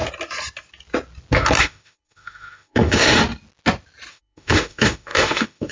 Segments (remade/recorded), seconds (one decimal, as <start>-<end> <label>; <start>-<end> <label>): 0.0-1.6 recorded; 1.6-3.2 remade; 3.2-4.1 recorded; 4.1-5.7 remade